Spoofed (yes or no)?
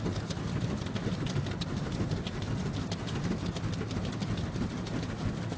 no